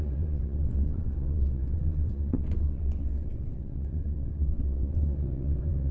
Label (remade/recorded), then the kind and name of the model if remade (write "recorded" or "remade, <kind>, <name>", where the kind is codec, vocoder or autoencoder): remade, vocoder, WaveNeXt